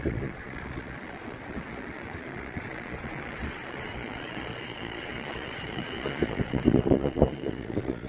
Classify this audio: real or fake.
fake